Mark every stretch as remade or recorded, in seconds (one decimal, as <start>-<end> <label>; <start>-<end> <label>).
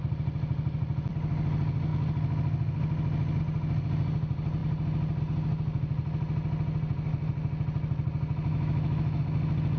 0.0-8.5 recorded; 8.5-9.2 remade; 9.2-9.8 recorded